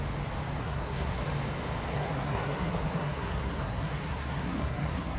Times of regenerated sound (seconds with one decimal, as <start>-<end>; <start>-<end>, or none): 0.6-1.2; 1.9-5.2